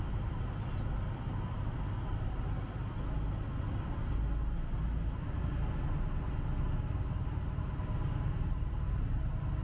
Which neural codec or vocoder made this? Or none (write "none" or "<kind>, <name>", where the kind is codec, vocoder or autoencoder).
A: none